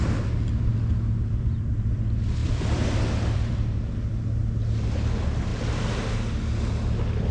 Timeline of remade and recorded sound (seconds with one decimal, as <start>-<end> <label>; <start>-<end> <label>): 0.0-0.7 remade; 0.7-1.4 recorded; 1.4-5.5 remade; 5.5-7.3 recorded